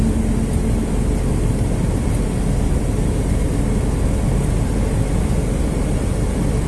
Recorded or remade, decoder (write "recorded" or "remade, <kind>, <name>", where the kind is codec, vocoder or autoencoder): recorded